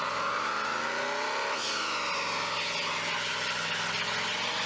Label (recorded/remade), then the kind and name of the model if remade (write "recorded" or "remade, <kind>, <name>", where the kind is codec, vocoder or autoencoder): recorded